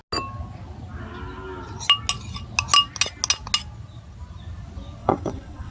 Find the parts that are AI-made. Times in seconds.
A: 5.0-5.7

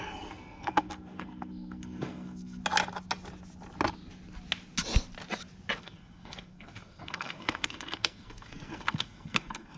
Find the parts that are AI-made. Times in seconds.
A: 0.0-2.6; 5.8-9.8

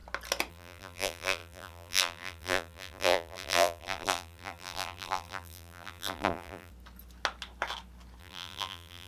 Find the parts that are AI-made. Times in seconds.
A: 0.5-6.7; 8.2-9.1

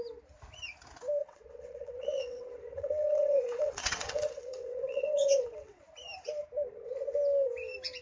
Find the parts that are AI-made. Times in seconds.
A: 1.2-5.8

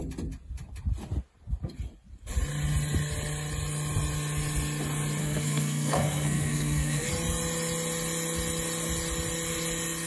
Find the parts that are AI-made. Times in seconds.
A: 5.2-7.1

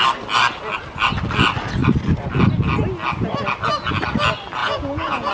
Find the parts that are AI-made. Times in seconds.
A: 4.6-5.3

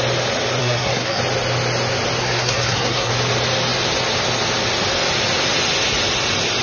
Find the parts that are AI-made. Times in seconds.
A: 0.6-1.2; 2.2-3.1